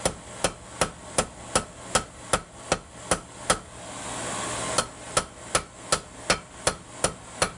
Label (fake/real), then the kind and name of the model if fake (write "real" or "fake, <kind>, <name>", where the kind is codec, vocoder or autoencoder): real